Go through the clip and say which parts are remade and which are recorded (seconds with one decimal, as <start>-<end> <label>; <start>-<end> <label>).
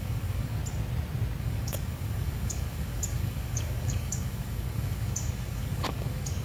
0.0-0.6 remade; 0.6-1.4 recorded; 1.4-6.4 remade